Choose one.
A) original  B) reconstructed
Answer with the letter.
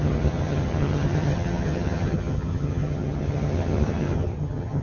B